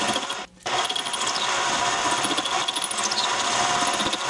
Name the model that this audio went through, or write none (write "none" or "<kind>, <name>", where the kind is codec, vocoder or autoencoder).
none